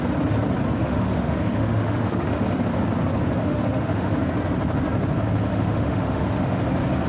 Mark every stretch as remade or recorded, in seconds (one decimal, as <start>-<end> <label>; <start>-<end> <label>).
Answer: 0.0-0.8 recorded; 0.8-2.4 remade; 2.4-3.4 recorded; 3.4-4.2 remade; 4.2-5.5 recorded; 5.5-6.6 remade; 6.6-7.1 recorded